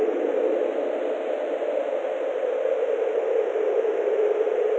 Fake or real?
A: real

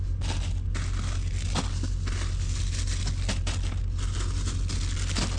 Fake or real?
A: real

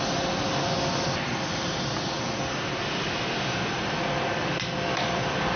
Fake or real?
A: real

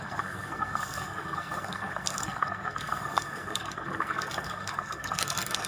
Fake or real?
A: fake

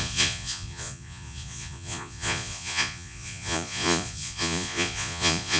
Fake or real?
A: fake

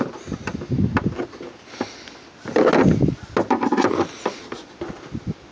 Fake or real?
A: real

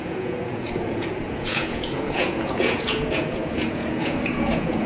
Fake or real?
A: fake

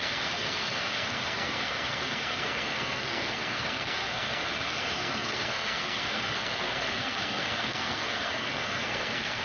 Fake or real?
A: fake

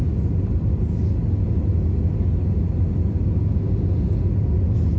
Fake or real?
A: real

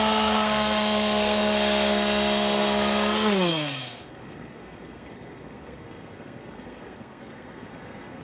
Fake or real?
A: fake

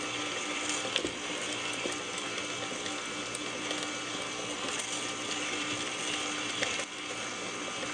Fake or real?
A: real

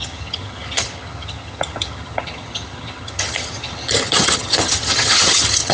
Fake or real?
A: fake